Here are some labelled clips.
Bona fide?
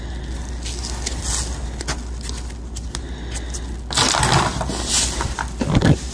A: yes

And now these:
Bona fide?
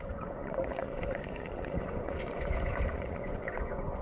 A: no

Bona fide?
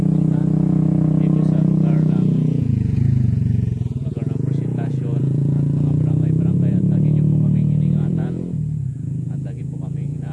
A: no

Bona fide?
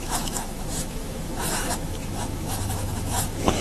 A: no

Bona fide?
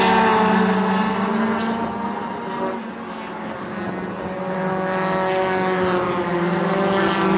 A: yes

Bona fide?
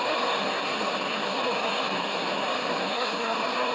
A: no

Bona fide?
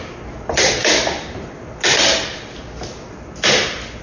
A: yes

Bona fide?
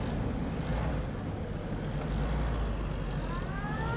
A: yes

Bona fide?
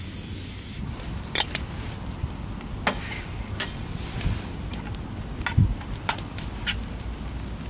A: yes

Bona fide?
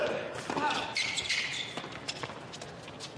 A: yes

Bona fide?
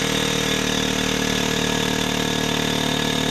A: yes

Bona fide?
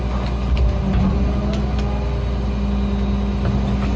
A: yes